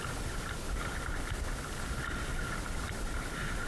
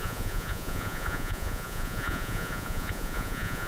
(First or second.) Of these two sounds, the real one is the first